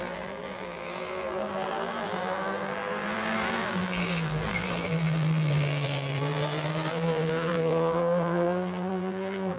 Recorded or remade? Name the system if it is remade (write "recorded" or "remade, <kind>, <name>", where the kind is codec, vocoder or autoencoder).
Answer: remade, vocoder, BigVGAN v2